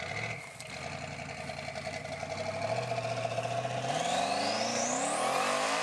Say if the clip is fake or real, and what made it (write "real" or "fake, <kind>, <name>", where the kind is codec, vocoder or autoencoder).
real